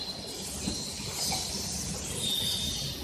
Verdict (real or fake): real